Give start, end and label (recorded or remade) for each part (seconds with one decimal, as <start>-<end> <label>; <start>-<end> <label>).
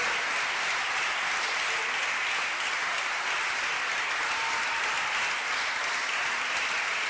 0.0-7.1 recorded